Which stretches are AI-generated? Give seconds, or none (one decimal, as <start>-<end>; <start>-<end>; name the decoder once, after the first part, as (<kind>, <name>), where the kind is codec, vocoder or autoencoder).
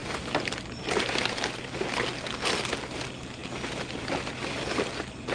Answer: 0.0-1.6 (vocoder, BigVGAN v2)